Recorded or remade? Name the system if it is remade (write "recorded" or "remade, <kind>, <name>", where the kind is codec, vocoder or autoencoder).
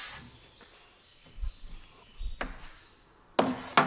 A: recorded